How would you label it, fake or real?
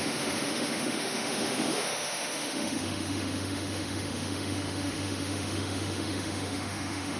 fake